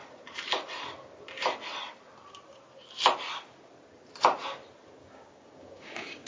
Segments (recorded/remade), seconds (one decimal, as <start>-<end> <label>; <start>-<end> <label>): 0.0-5.0 recorded; 5.0-6.3 remade